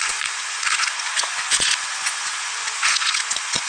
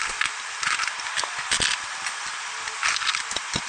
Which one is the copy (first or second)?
first